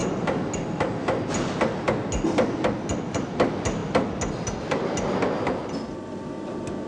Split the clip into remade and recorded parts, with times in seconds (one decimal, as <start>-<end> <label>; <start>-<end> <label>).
0.0-6.9 recorded